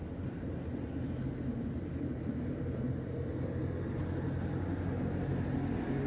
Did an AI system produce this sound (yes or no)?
no